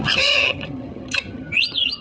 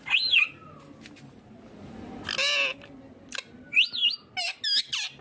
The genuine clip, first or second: second